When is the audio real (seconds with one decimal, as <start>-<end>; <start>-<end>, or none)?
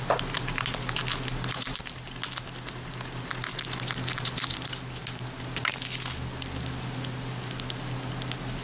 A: 0.0-8.6